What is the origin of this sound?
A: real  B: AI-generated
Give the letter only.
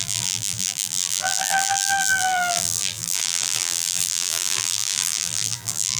B